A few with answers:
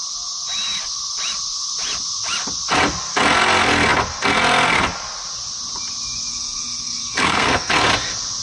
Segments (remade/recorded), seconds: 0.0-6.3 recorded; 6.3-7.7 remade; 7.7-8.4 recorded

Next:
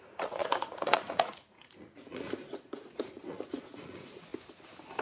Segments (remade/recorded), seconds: 0.0-4.3 remade; 4.3-5.0 recorded

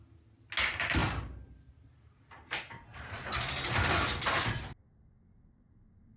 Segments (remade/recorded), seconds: 0.0-6.2 recorded

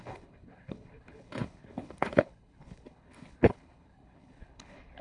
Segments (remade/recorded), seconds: 0.0-5.0 remade

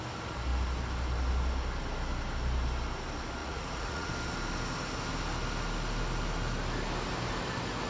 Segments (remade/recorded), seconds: 0.0-3.4 recorded; 3.4-4.1 remade; 4.1-7.9 recorded

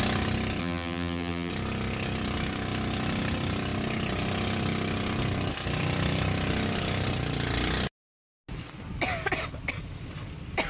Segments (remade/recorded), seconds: 0.0-0.6 recorded; 0.6-1.5 remade; 1.5-10.7 recorded

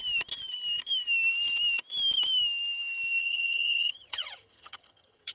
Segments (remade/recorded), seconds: 0.0-3.2 recorded; 3.2-5.3 remade